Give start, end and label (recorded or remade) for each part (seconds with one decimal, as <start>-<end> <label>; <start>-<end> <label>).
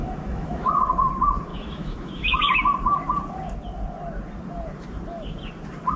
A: 0.0-0.7 remade; 0.7-1.5 recorded; 1.5-2.6 remade; 2.6-6.0 recorded